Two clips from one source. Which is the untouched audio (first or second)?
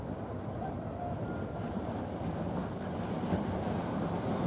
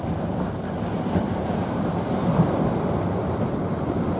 first